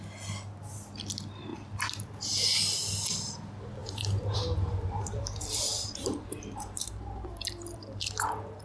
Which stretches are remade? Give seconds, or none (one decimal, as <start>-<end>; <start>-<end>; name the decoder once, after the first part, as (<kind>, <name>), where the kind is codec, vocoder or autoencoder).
3.8-8.6 (vocoder, BigVGAN v2)